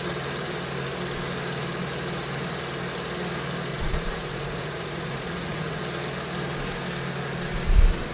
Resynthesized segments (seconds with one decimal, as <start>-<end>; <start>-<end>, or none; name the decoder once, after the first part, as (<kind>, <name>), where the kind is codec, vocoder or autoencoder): 3.7-5.8 (vocoder, Vocos)